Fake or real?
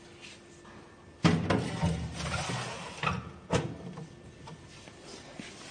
real